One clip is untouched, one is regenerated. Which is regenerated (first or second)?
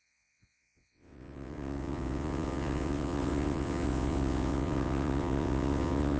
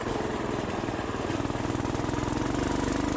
first